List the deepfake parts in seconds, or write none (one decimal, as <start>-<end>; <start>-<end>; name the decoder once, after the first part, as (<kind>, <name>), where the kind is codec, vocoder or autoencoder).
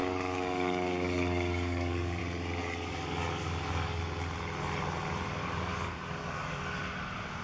0.0-2.2 (codec, DAC); 2.6-4.0; 5.4-6.8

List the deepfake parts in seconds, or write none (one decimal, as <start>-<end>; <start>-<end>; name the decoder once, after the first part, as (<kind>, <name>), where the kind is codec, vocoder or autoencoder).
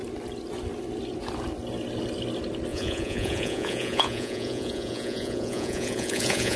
2.7-6.6 (vocoder, Vocos)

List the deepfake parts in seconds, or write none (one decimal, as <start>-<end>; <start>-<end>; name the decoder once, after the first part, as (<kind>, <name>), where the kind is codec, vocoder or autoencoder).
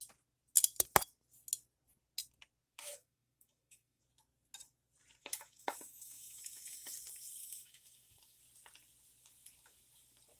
2.6-4.0 (autoencoder, DAC-VAE); 5.2-6.9; 7.4-8.4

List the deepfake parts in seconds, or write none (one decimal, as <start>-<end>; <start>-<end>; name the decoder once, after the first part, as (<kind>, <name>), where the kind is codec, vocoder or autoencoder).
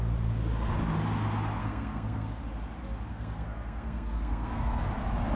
1.6-2.4 (codec, SNAC); 3.1-4.8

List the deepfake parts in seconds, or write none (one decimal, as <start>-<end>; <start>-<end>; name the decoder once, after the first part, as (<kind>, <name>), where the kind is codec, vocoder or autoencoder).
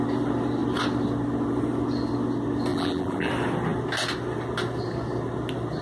2.7-3.3 (vocoder, BigVGAN v2)